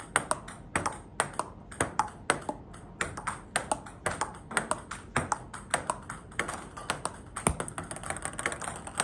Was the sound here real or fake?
real